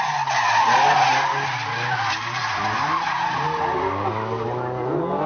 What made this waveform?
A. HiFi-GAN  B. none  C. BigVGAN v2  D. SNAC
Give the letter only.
B